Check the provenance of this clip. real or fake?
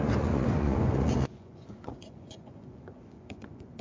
fake